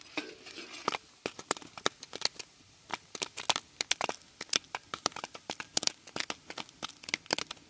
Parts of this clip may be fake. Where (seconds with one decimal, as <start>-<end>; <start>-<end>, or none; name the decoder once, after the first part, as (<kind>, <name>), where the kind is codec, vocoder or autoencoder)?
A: 4.9-5.6 (vocoder, BigVGAN v2)

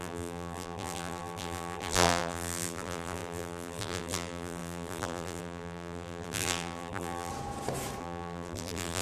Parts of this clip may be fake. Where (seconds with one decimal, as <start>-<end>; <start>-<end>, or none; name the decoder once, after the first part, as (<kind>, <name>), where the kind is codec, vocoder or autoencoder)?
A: 0.0-7.3 (vocoder, BigVGAN v2); 8.0-9.0

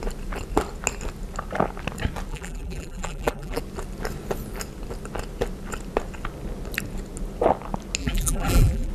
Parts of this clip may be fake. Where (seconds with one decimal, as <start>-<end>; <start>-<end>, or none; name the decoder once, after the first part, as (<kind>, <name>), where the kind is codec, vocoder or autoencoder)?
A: 2.3-3.6 (vocoder, BigVGAN v2); 8.0-8.9

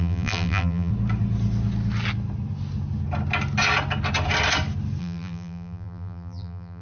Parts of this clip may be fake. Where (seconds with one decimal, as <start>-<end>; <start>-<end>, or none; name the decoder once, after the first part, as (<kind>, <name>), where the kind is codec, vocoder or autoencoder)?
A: 0.0-0.9 (vocoder, BigVGAN v2); 5.0-6.8

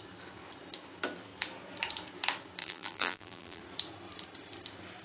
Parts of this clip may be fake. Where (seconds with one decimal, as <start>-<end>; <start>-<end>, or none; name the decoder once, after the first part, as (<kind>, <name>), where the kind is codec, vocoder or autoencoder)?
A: 2.6-3.6 (vocoder, BigVGAN v2)

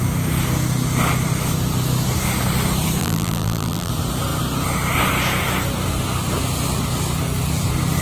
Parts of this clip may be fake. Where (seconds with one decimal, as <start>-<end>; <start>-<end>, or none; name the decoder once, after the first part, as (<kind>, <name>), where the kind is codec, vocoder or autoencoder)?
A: 3.0-3.9 (vocoder, BigVGAN v2)

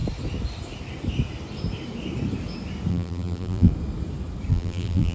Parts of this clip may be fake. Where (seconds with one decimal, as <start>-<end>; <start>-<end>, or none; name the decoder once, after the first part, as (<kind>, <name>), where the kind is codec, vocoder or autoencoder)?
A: 2.9-3.7 (vocoder, BigVGAN v2); 4.5-5.1